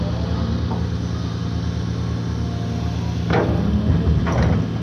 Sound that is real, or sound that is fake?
real